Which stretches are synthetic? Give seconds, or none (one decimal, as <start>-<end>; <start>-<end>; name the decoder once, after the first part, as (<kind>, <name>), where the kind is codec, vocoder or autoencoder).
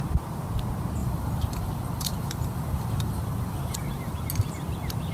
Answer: 1.0-4.1 (vocoder, BigVGAN v2)